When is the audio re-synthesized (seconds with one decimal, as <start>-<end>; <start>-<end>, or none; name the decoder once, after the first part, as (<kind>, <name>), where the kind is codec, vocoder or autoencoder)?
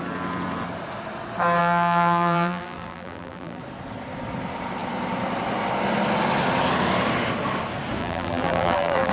1.6-3.6 (vocoder, BigVGAN v2); 8.0-9.1